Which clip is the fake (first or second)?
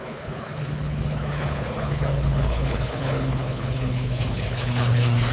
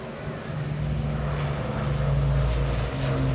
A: first